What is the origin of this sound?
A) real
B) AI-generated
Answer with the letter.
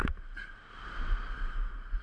B